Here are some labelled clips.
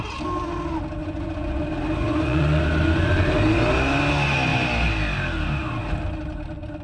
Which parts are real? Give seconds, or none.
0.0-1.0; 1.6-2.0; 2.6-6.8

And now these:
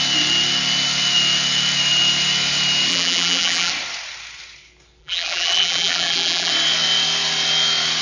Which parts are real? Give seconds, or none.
0.0-2.9; 3.7-5.0; 6.5-8.0